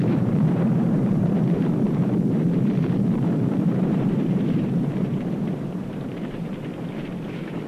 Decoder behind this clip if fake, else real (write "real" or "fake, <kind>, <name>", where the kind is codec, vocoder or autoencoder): fake, vocoder, BigVGAN v2